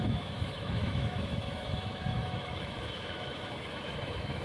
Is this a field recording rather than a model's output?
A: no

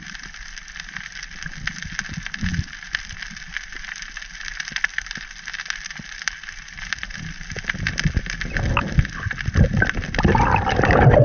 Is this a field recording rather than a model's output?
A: yes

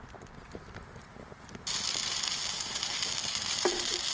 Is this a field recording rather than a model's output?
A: yes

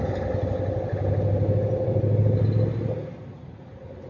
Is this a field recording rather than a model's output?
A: yes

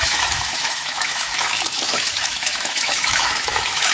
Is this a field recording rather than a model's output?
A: no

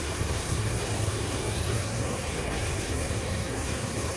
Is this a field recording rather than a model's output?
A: no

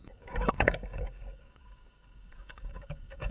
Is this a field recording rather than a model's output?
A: no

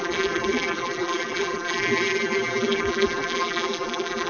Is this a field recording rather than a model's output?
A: no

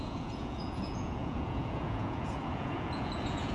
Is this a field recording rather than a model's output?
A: no